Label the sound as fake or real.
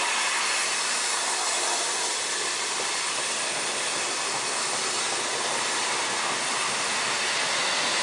real